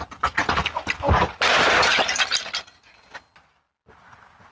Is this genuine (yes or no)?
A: yes